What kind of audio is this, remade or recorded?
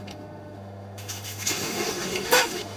remade